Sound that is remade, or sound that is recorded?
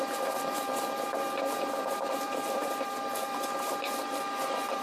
remade